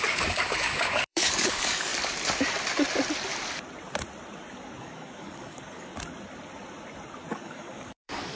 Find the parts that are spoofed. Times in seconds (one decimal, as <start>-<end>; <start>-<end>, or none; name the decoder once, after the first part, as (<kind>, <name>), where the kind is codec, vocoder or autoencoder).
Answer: 0.0-1.9 (codec, DAC); 4.8-5.9; 7.3-8.4